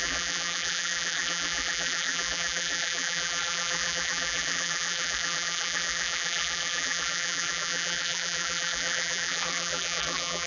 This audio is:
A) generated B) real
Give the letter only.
A